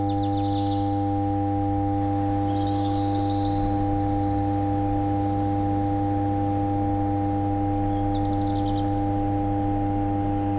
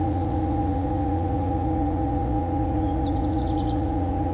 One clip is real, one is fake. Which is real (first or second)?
first